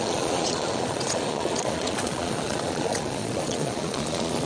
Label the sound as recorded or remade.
remade